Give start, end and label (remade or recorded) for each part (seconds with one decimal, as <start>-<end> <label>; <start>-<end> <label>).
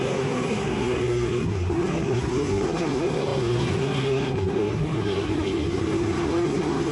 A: 0.0-6.9 remade